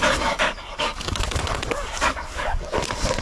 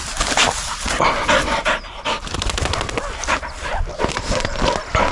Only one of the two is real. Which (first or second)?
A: second